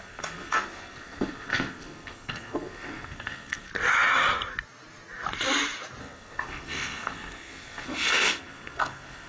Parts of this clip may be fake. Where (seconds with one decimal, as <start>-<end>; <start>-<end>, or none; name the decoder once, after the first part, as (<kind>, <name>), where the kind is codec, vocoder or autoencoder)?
0.0-3.7 (codec, SNAC); 6.0-9.3